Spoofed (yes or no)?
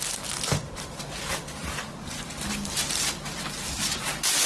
no